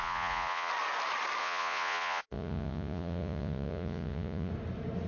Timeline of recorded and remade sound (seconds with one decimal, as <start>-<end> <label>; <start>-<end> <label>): 0.0-0.7 remade; 0.7-1.4 recorded; 1.4-4.5 remade; 4.5-5.1 recorded